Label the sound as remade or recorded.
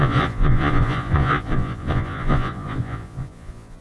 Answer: remade